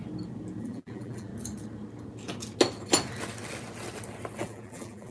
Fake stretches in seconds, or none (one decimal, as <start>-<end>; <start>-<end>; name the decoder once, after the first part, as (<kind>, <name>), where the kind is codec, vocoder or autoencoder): 0.6-1.3 (vocoder, BigVGAN v2); 4.4-5.1

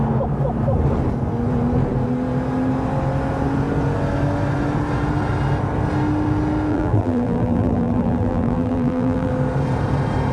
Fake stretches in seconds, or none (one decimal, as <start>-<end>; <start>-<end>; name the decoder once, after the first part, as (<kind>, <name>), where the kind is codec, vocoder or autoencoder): 6.7-9.3 (vocoder, BigVGAN v2)

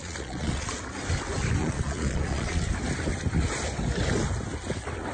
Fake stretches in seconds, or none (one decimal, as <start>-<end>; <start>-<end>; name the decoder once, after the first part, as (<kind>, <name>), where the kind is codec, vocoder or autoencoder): 0.0-0.7 (vocoder, Vocos); 1.6-2.7

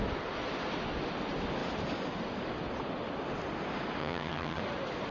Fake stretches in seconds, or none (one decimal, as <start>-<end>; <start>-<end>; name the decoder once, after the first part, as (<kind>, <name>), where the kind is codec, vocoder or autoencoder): 4.0-4.6 (vocoder, HiFi-GAN)

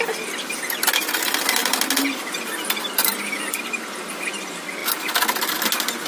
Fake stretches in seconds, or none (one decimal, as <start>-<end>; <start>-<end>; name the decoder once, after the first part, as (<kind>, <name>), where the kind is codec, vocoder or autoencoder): none

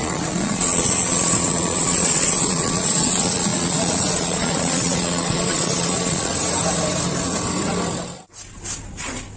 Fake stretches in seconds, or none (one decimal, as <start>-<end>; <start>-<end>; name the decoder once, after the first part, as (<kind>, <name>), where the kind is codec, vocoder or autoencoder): 0.0-6.3 (vocoder, Vocos)

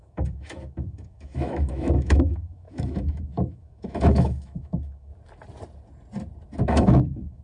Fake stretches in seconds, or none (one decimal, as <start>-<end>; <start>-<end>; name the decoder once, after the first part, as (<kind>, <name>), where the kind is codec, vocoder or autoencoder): 0.0-5.1 (autoencoder, DAC-VAE); 6.6-7.4

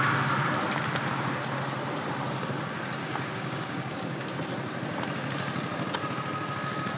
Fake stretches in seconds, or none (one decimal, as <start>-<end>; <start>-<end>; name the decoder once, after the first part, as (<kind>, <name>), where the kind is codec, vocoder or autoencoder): 3.0-4.3 (codec, DAC)